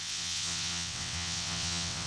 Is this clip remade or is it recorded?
remade